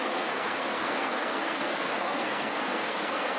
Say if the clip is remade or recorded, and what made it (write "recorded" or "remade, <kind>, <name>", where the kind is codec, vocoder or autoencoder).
remade, codec, SNAC